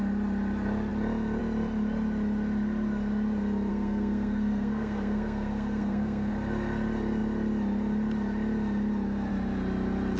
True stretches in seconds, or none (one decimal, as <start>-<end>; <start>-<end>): 0.0-3.7; 6.3-10.2